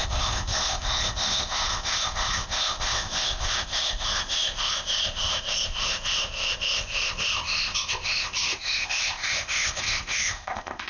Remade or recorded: remade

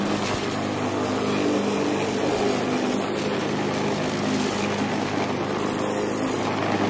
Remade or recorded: recorded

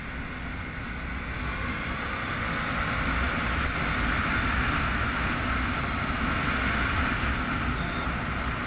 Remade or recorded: recorded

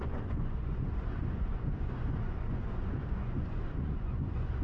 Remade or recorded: remade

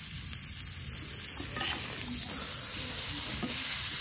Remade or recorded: recorded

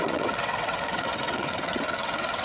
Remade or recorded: remade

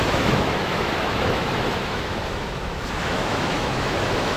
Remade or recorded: remade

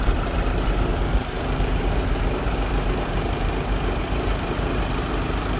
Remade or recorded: remade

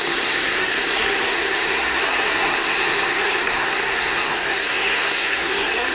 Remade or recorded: remade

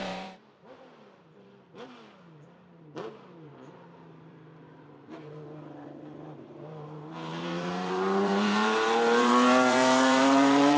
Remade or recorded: remade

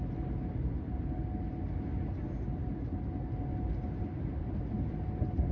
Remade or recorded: recorded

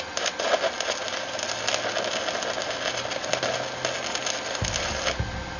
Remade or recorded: recorded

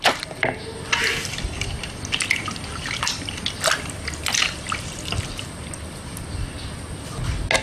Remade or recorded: recorded